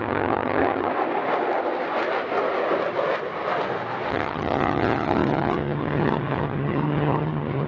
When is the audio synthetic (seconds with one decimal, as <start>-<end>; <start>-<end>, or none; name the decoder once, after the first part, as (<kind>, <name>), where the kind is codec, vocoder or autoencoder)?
0.0-0.9 (vocoder, HiFi-GAN); 4.1-7.7

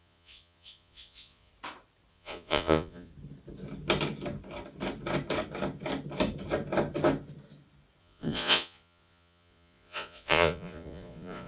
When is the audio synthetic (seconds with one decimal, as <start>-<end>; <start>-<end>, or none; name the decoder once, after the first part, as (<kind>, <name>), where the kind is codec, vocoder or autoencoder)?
0.0-1.5 (vocoder, Vocos); 2.1-3.1; 8.0-11.5

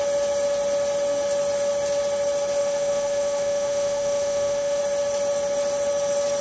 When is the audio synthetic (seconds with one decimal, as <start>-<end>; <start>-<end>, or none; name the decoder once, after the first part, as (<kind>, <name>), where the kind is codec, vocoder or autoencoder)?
2.6-4.8 (autoencoder, DAC-VAE)

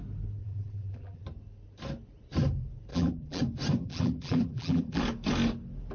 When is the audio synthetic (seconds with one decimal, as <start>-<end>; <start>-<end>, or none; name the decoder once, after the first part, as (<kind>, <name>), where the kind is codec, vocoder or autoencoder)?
0.4-1.2 (vocoder, BigVGAN v2); 2.9-3.4; 3.8-5.0